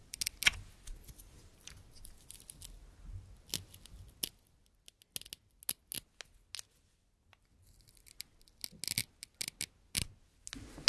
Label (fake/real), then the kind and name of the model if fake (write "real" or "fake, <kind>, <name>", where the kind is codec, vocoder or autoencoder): real